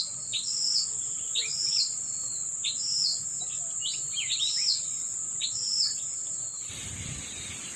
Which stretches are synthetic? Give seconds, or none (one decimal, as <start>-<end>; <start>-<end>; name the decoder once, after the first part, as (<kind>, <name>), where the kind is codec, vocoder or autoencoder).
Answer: none